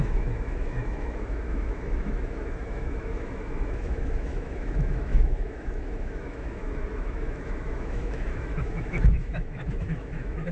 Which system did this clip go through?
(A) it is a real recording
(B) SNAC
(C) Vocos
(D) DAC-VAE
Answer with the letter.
D